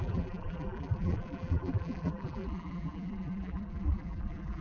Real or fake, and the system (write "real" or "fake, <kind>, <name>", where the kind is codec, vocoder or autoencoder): fake, vocoder, BigVGAN v2